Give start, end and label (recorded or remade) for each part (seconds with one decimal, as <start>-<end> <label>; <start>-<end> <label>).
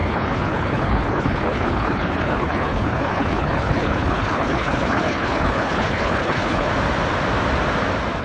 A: 0.0-6.7 remade; 6.7-8.2 recorded